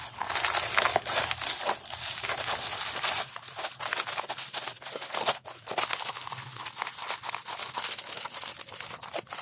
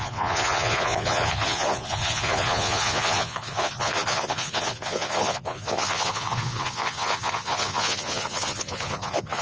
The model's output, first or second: second